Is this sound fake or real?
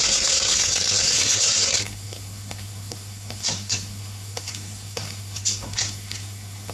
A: fake